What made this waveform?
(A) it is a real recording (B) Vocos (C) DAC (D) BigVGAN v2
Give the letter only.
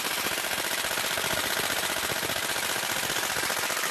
A